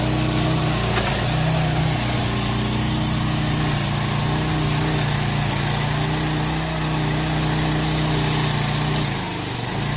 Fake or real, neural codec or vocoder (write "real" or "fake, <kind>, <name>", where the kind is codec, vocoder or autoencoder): real